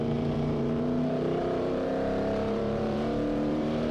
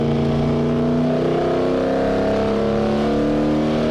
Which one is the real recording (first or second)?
second